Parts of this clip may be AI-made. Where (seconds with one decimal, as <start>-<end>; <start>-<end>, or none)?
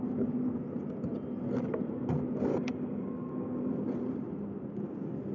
2.5-3.7